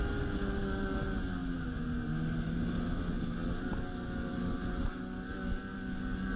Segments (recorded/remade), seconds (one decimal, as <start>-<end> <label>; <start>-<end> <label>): 0.0-6.4 recorded